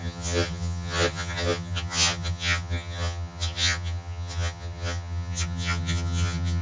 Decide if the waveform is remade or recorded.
remade